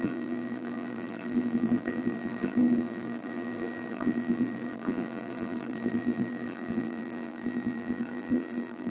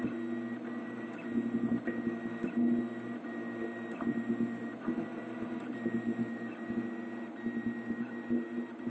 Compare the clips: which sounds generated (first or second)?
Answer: first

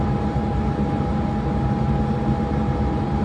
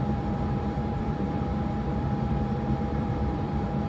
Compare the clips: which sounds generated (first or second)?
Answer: second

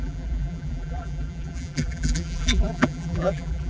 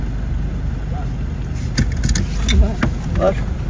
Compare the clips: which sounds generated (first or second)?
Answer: first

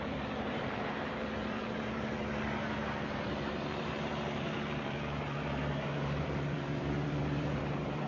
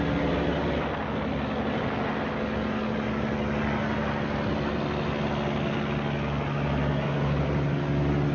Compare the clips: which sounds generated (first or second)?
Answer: first